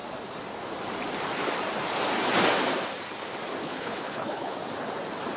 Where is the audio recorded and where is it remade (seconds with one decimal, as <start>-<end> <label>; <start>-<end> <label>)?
0.0-3.6 recorded; 3.6-4.5 remade; 4.5-5.4 recorded